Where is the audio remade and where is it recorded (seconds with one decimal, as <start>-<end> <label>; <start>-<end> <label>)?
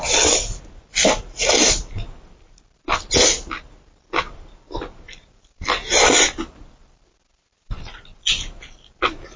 0.0-9.4 recorded